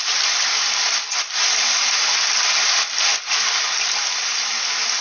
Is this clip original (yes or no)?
yes